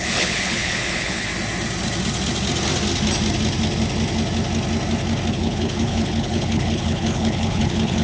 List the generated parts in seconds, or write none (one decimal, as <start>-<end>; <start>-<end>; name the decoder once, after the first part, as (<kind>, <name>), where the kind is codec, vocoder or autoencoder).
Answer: 0.0-1.3 (codec, HILCodec); 5.3-8.0